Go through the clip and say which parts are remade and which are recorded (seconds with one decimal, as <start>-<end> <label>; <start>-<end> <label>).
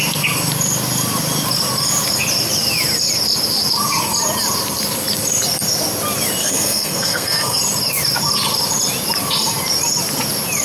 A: 0.0-6.4 recorded; 6.4-7.6 remade; 7.6-10.6 recorded